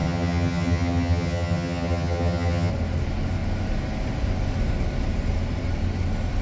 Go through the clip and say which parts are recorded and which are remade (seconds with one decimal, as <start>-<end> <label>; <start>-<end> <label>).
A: 0.0-2.7 remade; 2.7-6.4 recorded